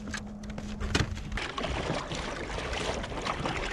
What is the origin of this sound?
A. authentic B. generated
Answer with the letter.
A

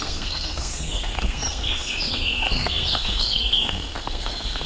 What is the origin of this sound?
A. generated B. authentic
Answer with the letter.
A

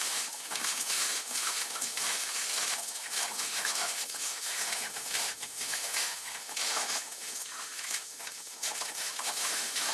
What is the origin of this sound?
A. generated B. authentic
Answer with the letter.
A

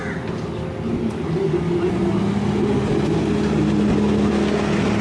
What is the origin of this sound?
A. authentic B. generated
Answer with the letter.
A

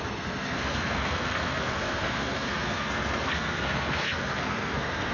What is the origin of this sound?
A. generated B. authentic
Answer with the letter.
A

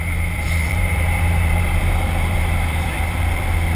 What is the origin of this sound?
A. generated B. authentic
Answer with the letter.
A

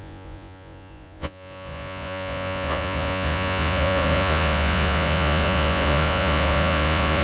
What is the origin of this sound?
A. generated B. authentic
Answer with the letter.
A